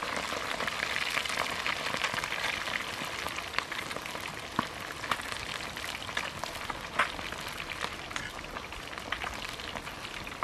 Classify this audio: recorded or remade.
recorded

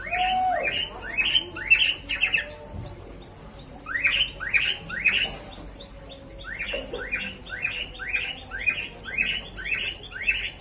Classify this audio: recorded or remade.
recorded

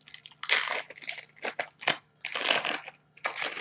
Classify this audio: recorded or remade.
recorded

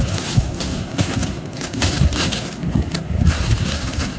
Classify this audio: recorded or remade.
remade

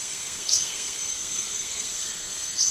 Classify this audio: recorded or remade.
remade